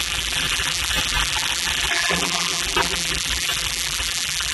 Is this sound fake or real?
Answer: fake